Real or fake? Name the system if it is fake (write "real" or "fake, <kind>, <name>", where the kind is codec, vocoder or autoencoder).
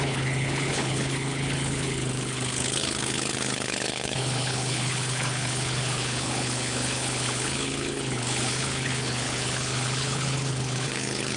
fake, codec, HILCodec